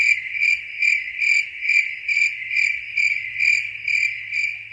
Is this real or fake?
real